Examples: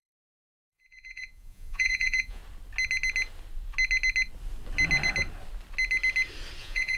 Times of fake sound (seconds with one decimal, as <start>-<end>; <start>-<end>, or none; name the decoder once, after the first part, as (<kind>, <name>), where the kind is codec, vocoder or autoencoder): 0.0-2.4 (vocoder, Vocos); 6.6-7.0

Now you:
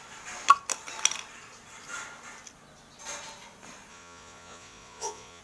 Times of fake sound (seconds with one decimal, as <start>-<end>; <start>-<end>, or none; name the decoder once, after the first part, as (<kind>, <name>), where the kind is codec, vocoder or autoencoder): 3.9-5.4 (vocoder, Vocos)

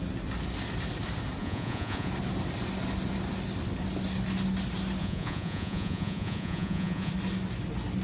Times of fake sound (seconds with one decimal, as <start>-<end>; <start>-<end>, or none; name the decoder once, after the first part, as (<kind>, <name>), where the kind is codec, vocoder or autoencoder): 1.4-2.1 (vocoder, Vocos); 5.0-7.1

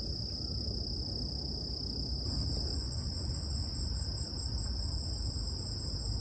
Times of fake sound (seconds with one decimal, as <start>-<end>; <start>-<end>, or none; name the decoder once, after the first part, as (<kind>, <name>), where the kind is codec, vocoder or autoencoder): 2.7-3.9 (vocoder, Vocos)

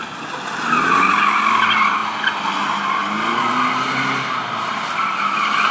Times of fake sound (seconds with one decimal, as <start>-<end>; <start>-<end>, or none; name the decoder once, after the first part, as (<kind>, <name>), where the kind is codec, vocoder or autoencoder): none

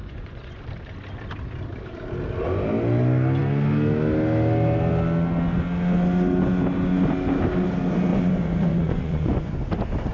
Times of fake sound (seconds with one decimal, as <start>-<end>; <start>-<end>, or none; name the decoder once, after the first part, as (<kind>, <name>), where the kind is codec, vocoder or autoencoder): 0.0-0.6 (vocoder, Vocos); 8.1-9.5

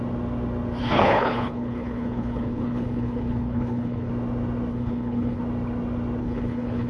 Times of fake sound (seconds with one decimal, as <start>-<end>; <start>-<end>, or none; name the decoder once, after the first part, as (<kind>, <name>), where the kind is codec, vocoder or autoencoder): 0.8-4.1 (codec, HILCodec); 4.7-5.4; 6.2-6.9